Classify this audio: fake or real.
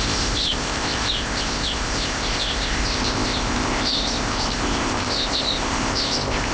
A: fake